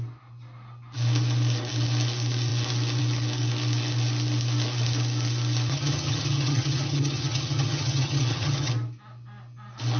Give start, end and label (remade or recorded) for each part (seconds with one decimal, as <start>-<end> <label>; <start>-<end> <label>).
0.0-5.7 recorded; 5.7-8.7 remade; 8.7-10.0 recorded